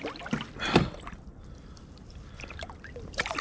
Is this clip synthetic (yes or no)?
no